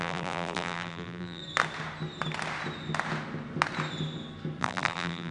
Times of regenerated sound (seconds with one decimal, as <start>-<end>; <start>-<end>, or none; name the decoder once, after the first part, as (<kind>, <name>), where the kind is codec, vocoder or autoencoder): 0.0-1.4 (vocoder, BigVGAN v2); 4.6-5.3